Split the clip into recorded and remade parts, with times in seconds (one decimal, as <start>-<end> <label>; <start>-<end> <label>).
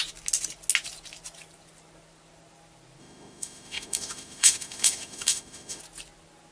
0.0-3.0 recorded; 3.0-5.8 remade; 5.8-6.5 recorded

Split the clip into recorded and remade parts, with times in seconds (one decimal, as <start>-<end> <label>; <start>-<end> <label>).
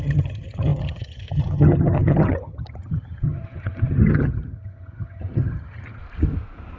0.0-6.0 remade; 6.0-6.8 recorded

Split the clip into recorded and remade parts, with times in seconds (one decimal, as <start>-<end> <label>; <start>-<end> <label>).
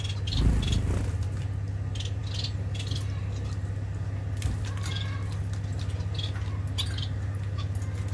0.0-8.1 recorded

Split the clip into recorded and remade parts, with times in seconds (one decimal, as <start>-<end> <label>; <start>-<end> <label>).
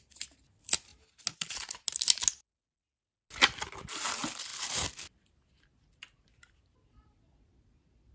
0.0-8.1 recorded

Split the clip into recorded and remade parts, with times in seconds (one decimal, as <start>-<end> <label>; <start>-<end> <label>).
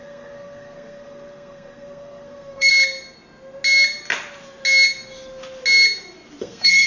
0.0-2.7 remade; 2.7-6.4 recorded; 6.4-6.9 remade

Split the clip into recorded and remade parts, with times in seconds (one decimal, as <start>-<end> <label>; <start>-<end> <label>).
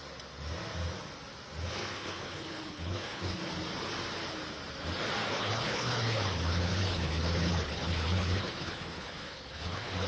0.0-1.7 recorded; 1.7-3.4 remade; 3.4-5.3 recorded; 5.3-10.1 remade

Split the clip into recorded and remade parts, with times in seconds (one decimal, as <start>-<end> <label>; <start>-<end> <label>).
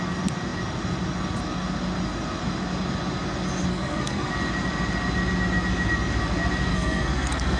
0.0-3.7 recorded; 3.7-4.3 remade; 4.3-6.7 recorded; 6.7-7.6 remade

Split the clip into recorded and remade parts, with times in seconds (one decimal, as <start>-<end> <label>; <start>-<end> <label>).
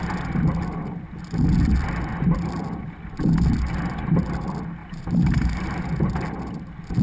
0.0-4.8 recorded; 4.8-5.8 remade; 5.8-7.0 recorded